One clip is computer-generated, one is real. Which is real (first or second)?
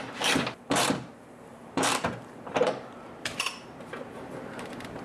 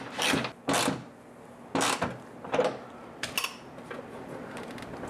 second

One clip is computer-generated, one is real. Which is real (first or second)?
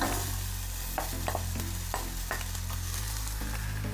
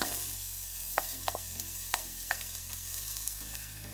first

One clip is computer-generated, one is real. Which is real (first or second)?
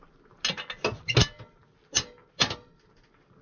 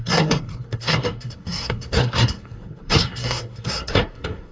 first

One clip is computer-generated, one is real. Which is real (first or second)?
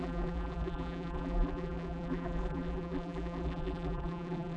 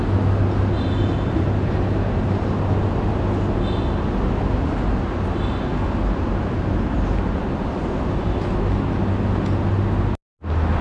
second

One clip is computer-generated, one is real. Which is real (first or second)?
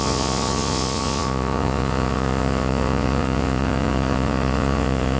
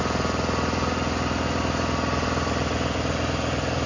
second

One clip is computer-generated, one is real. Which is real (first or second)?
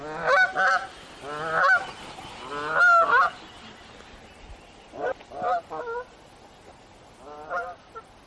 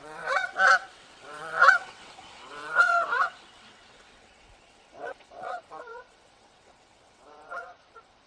first